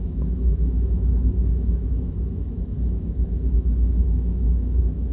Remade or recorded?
remade